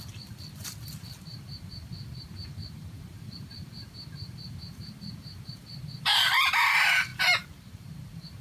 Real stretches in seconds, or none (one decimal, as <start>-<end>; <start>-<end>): 0.0-1.3; 6.3-7.1